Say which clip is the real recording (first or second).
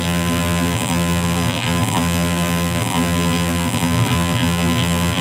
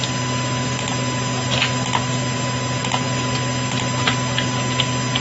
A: second